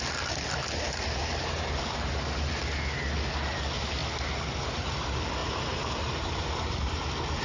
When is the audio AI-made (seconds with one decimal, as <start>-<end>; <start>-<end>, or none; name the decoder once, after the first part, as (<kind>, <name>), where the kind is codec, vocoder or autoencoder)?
1.2-2.6 (vocoder, BigVGAN v2); 5.4-6.4